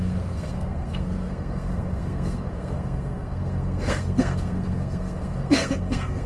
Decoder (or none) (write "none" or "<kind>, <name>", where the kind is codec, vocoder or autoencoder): codec, SNAC